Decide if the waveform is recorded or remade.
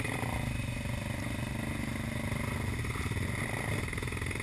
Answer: recorded